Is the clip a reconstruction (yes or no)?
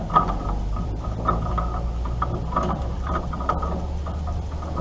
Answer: yes